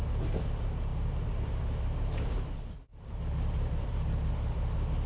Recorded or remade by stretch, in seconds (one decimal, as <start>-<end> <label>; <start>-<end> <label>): 0.0-2.9 recorded; 2.9-4.3 remade; 4.3-5.1 recorded